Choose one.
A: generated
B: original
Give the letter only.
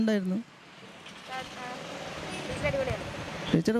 B